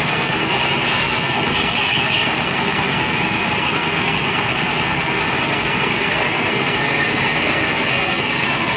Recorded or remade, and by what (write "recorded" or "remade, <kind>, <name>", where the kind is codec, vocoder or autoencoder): remade, codec, SNAC